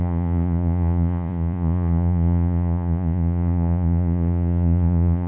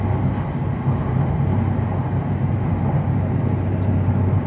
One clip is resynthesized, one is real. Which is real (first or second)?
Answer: second